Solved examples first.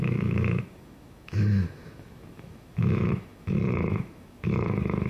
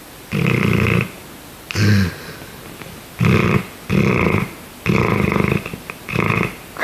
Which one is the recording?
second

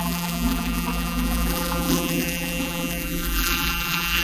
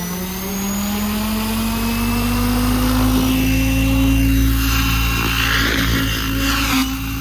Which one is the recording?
second